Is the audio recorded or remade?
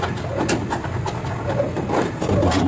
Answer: recorded